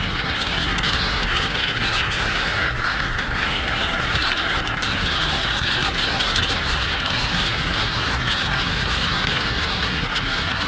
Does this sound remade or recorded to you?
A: remade